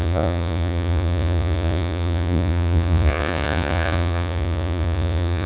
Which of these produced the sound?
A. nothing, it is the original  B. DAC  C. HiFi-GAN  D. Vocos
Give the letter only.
D